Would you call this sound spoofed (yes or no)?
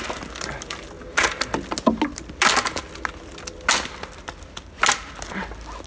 no